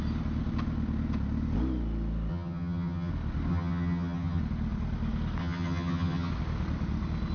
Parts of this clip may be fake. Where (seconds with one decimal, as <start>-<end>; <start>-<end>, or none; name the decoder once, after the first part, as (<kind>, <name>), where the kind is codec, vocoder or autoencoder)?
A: 2.3-3.1 (vocoder, HiFi-GAN); 3.5-4.4; 5.4-6.3